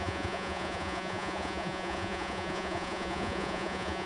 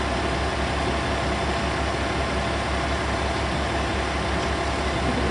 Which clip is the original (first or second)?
second